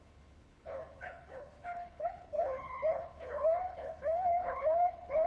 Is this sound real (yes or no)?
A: no